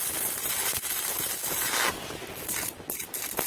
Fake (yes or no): no